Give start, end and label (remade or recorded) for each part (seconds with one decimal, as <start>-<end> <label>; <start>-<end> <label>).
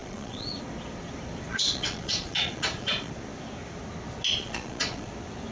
0.0-0.5 remade; 0.5-1.5 recorded; 1.5-3.1 remade; 3.1-4.4 recorded; 4.4-5.1 remade; 5.1-5.5 recorded